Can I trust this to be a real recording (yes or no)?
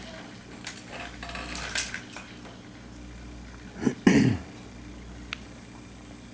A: yes